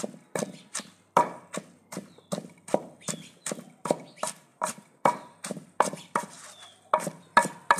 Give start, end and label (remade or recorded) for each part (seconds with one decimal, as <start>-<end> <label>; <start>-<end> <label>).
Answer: 0.0-4.5 recorded; 4.5-6.0 remade; 6.0-7.8 recorded

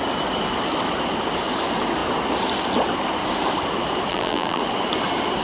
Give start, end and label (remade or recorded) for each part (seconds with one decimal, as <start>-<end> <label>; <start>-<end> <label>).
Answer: 0.0-4.1 recorded; 4.1-4.6 remade; 4.6-5.4 recorded

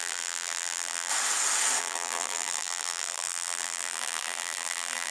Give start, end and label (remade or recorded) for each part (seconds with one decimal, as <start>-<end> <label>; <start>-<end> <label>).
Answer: 0.0-1.1 remade; 1.1-1.8 recorded; 1.8-5.1 remade

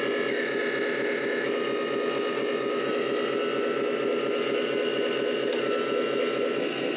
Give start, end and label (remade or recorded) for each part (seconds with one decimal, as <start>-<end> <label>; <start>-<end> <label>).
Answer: 0.0-7.0 recorded

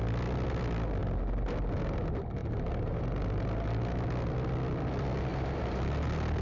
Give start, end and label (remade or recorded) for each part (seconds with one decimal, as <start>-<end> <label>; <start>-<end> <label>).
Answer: 0.0-2.4 recorded; 2.4-3.0 remade; 3.0-5.3 recorded; 5.3-5.8 remade; 5.8-6.4 recorded

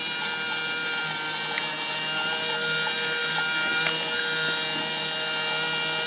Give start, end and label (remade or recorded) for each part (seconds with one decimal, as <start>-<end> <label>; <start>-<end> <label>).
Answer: 0.0-6.1 recorded

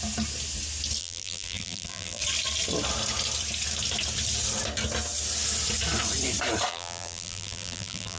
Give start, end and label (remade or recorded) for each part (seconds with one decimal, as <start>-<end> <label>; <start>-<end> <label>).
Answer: 0.0-1.0 recorded; 1.0-2.2 remade; 2.2-6.7 recorded; 6.7-8.2 remade